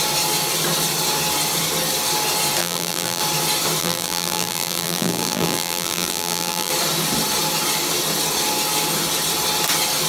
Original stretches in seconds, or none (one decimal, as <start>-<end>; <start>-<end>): 0.0-2.6; 3.2-3.8; 6.7-10.1